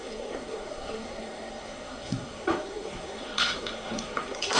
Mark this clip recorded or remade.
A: remade